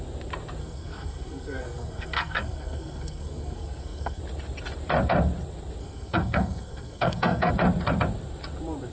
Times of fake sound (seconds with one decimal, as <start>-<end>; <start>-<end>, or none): 0.6-4.2; 5.8-7.5